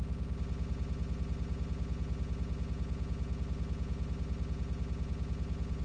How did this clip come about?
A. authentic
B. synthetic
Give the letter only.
A